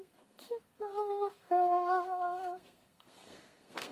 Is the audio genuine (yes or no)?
no